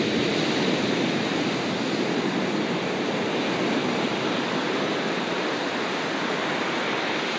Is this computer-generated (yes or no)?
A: no